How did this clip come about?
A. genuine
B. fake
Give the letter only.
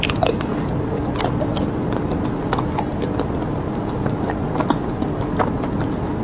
A